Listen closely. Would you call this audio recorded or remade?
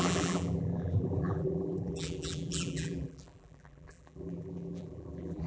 remade